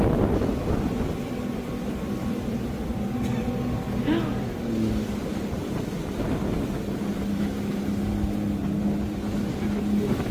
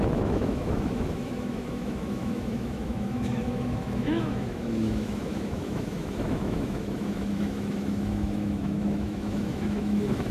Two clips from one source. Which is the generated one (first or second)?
second